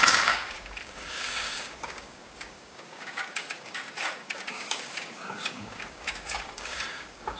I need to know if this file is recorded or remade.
remade